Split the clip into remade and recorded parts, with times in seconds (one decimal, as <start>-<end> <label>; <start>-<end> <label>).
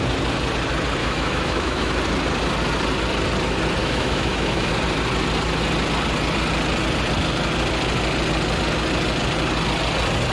0.0-1.0 recorded; 1.0-1.9 remade; 1.9-3.8 recorded; 3.8-4.7 remade; 4.7-10.3 recorded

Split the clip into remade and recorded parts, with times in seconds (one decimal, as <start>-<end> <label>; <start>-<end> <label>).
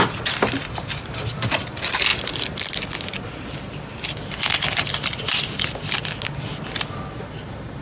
0.0-7.8 recorded